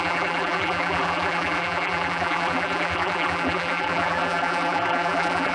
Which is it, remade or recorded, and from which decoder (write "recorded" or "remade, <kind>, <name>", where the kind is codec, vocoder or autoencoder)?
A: remade, vocoder, BigVGAN v2